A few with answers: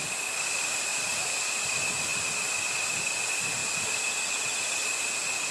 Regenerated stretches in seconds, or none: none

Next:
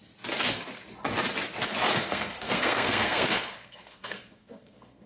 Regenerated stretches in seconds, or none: 1.9-5.1 (codec, SNAC)

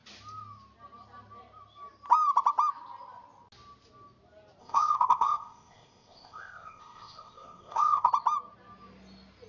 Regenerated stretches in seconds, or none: 4.6-8.1 (codec, ZipCodec)

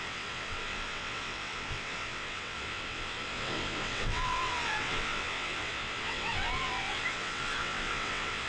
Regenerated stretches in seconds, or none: 0.0-8.5 (vocoder, WaveNeXt)

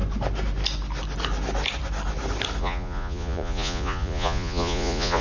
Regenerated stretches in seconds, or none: 2.6-5.2 (vocoder, Vocos)

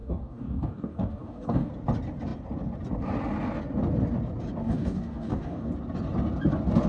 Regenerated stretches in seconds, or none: 0.0-1.7 (codec, DAC); 4.6-5.7

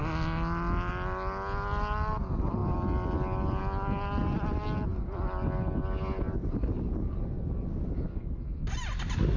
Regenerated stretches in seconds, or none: none